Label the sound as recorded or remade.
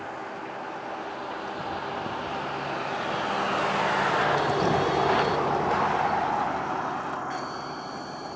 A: recorded